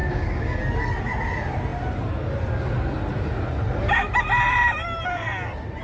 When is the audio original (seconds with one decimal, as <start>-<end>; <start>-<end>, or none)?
0.6-5.8